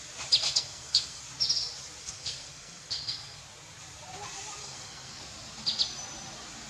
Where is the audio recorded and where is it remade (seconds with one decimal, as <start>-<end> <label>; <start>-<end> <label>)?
0.0-0.4 recorded; 0.4-1.2 remade; 1.2-2.0 recorded; 2.0-3.4 remade; 3.4-4.6 recorded; 4.6-5.2 remade; 5.2-6.7 recorded